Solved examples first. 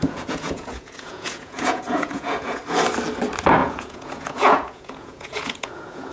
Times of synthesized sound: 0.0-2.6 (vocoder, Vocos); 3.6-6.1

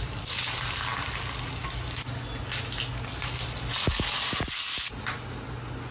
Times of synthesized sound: none

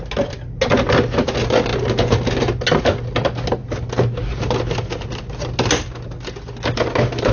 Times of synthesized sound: none

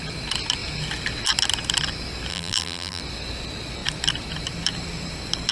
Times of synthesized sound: 2.3-3.0 (vocoder, BigVGAN v2)